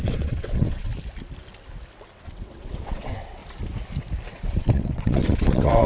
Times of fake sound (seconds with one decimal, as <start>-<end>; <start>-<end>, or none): 0.0-0.9; 2.1-3.4; 4.3-5.9